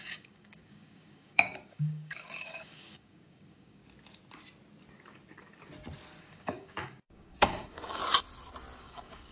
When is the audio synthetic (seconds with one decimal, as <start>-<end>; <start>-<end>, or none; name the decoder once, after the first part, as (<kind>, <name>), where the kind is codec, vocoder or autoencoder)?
0.0-3.8 (codec, DAC); 6.2-8.0; 8.8-9.3